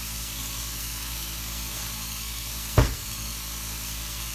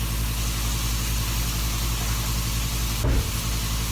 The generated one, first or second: first